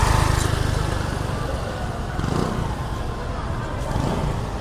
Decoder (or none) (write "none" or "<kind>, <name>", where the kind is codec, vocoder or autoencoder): none